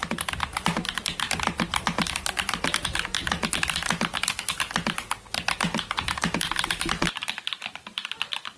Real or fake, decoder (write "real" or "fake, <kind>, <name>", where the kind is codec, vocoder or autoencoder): real